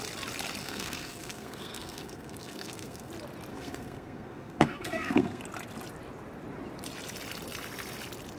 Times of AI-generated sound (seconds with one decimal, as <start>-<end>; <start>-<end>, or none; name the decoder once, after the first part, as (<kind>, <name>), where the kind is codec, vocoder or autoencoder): 0.6-3.1 (codec, SNAC); 3.5-5.4